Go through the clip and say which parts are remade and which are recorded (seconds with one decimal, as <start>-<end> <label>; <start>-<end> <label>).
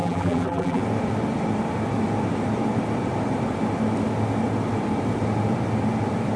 0.0-0.8 remade; 0.8-6.4 recorded